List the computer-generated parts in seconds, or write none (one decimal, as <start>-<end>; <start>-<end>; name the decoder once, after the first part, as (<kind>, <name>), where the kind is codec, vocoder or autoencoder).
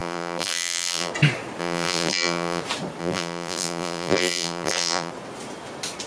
0.0-1.1 (vocoder, BigVGAN v2); 1.6-2.6; 3.0-5.1